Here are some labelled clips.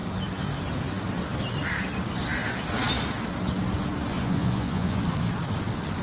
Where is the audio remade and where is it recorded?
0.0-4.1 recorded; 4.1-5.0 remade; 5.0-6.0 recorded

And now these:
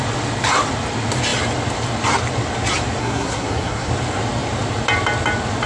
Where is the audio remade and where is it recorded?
0.0-3.0 recorded; 3.0-3.9 remade; 3.9-5.7 recorded

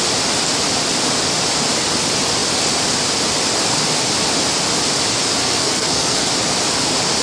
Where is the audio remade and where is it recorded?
0.0-5.4 recorded; 5.4-6.3 remade; 6.3-7.2 recorded

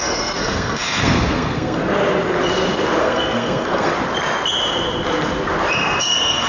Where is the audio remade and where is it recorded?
0.0-1.8 remade; 1.8-3.0 recorded; 3.0-3.9 remade; 3.9-6.0 recorded; 6.0-6.5 remade